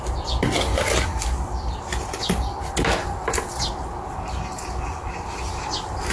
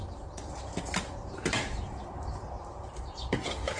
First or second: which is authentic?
first